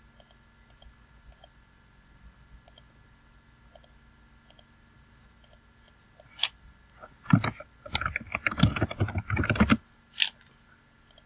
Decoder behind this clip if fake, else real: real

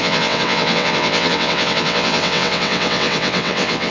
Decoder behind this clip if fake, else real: fake, vocoder, WaveNeXt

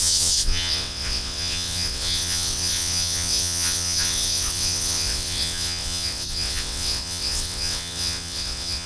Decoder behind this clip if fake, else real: fake, vocoder, WaveNeXt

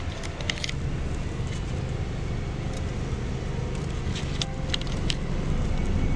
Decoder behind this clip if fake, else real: real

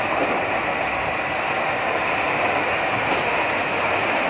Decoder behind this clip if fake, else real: real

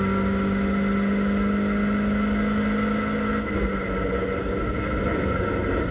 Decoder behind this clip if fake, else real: real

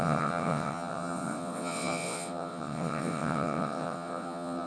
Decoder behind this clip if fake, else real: fake, vocoder, WaveNeXt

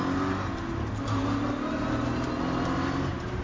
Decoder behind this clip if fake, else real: real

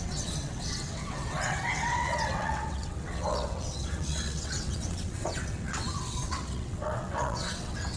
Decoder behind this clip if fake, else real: fake, vocoder, WaveNeXt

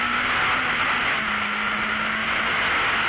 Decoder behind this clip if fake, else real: real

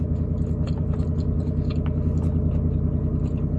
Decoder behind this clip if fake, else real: real